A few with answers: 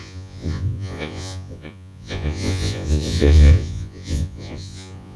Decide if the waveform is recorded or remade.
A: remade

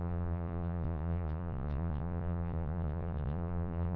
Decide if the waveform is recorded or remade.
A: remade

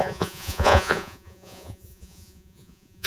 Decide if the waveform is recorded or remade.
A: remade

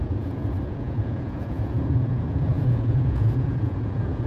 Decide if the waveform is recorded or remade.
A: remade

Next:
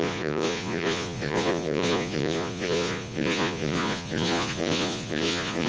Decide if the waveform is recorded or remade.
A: remade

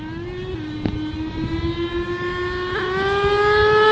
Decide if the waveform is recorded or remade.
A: recorded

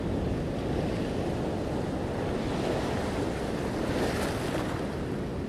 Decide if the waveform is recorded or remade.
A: recorded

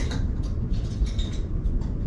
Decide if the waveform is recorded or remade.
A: remade